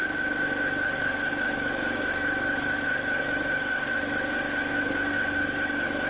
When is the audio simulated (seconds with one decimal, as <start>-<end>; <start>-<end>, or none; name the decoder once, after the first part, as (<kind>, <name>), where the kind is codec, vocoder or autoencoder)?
0.0-6.1 (autoencoder, DAC-VAE)